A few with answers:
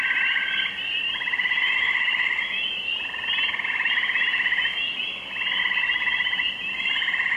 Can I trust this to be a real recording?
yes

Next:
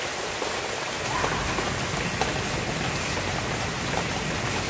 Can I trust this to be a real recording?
yes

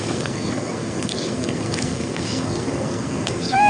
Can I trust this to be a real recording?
no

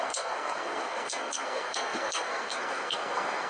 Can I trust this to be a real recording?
no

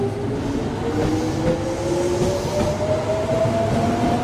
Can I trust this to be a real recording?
yes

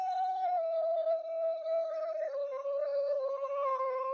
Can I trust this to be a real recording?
no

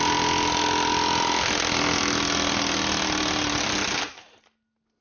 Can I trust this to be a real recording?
yes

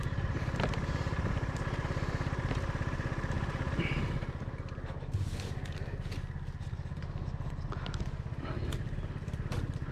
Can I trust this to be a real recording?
yes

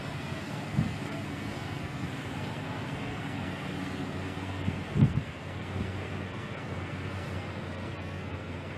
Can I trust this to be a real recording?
no